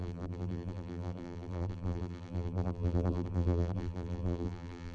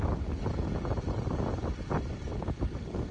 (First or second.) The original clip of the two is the second